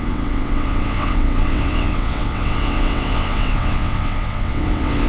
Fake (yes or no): yes